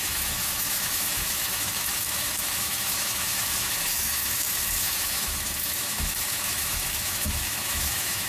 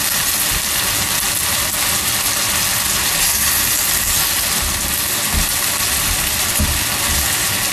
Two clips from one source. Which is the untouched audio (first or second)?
second